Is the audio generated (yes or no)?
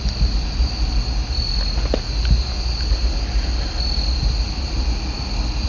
no